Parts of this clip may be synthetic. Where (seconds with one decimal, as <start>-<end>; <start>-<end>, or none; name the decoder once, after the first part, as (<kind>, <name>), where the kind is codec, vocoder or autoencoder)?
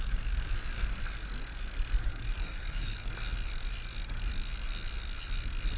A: 2.1-3.1 (codec, DAC)